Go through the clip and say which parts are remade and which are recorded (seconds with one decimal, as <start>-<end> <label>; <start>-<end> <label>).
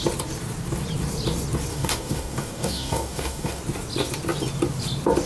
0.0-1.7 recorded; 1.7-3.6 remade; 3.6-5.3 recorded